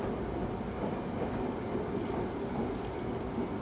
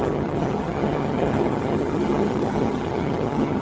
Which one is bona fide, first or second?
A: first